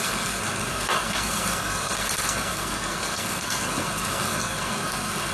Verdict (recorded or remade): remade